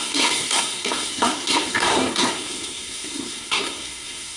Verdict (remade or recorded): remade